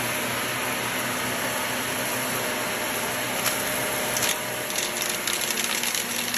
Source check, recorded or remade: recorded